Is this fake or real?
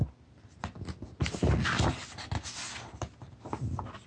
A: real